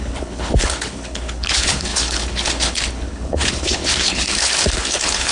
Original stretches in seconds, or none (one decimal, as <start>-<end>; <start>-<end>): none